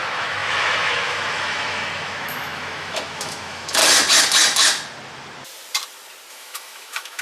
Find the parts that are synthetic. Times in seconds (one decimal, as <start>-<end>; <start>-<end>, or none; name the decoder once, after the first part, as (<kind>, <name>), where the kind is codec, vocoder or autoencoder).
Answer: 0.0-3.8 (autoencoder, DAC-VAE); 6.3-7.2